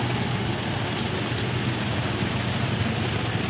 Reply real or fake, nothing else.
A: real